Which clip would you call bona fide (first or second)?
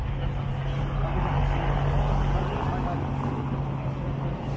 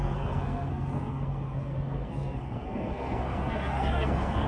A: first